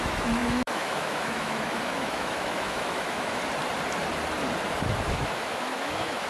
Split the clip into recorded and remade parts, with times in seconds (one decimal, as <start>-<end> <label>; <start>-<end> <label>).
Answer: 0.0-3.4 remade; 3.4-5.1 recorded; 5.1-6.3 remade